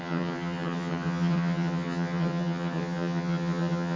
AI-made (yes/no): yes